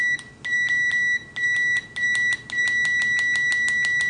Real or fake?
real